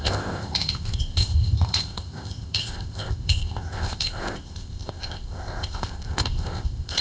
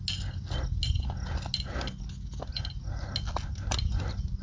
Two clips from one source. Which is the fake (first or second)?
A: first